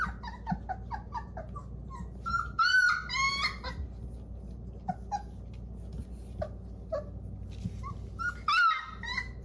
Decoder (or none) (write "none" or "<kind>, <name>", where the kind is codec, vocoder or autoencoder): none